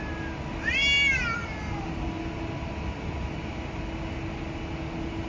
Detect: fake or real real